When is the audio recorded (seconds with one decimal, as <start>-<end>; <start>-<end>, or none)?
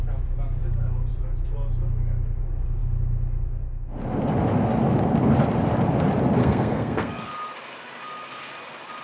0.0-6.4; 7.3-9.0